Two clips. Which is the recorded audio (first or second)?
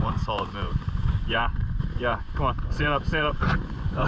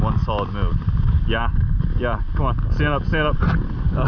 second